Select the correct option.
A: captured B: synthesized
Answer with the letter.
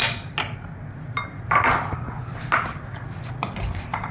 A